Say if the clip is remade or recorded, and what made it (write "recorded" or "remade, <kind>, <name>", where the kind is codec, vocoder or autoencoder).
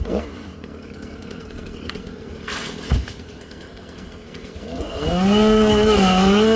remade, codec, SNAC